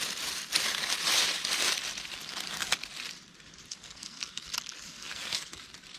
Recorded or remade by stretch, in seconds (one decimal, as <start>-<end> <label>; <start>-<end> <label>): 0.0-3.7 recorded; 3.7-4.5 remade; 4.5-4.9 recorded; 4.9-5.6 remade; 5.6-6.0 recorded